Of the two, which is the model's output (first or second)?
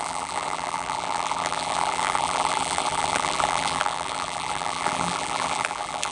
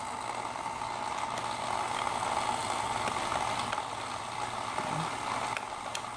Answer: first